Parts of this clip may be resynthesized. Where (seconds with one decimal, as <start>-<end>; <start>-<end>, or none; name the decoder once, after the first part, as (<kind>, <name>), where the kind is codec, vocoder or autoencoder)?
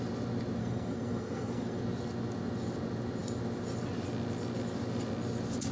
0.6-1.8 (codec, SNAC)